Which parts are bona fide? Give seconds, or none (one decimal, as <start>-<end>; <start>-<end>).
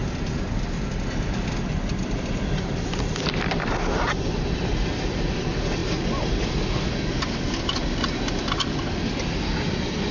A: 0.0-10.1